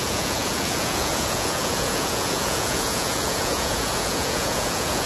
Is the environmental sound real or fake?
fake